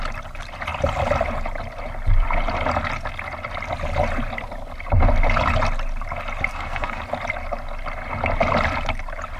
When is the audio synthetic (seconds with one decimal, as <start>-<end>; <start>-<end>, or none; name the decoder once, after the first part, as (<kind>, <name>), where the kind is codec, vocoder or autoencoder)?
6.5-7.0 (codec, SNAC)